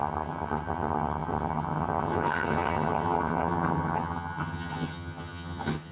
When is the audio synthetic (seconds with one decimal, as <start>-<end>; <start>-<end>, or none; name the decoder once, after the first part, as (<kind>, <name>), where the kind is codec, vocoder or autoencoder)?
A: 0.0-5.9 (vocoder, HiFi-GAN)